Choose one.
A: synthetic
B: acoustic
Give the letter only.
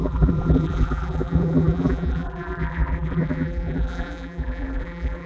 A